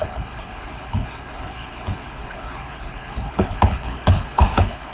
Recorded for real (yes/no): no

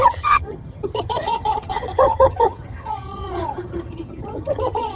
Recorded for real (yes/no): no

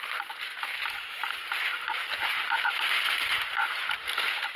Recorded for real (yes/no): yes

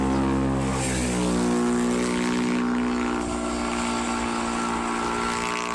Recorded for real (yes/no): yes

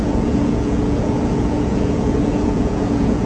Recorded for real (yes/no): no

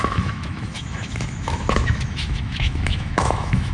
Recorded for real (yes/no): no